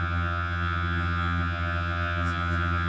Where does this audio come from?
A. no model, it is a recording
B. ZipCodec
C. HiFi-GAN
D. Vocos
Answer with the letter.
C